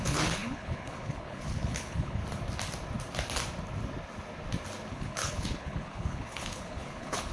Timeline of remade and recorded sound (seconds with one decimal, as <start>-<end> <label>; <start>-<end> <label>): 0.0-2.2 remade; 2.2-4.9 recorded; 4.9-7.3 remade